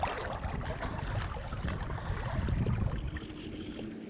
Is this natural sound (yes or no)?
yes